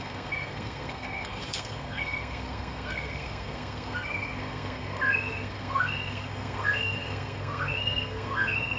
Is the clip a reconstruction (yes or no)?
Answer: yes